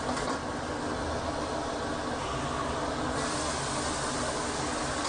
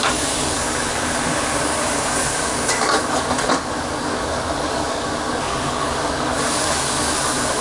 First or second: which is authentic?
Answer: first